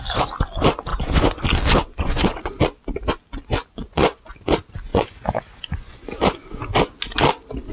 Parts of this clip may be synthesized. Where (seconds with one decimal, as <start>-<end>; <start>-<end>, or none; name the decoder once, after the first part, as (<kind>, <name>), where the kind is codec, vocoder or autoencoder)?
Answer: 0.9-1.4 (vocoder, Vocos); 1.8-2.5; 3.7-4.4; 4.9-6.2